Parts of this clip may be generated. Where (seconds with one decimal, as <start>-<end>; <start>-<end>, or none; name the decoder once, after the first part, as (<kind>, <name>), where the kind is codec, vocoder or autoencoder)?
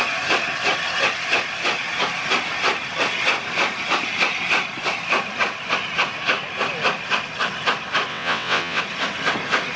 8.1-8.8 (vocoder, WaveNeXt)